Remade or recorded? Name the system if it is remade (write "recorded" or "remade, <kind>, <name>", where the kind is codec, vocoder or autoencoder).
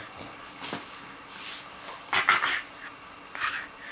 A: recorded